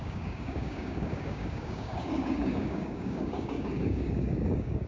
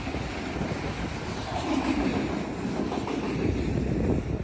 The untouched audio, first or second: second